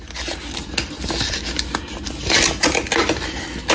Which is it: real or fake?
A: real